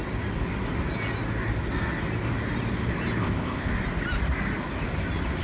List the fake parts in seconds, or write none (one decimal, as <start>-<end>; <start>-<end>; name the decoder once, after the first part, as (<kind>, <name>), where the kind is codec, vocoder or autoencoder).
3.2-3.7 (codec, ZipCodec)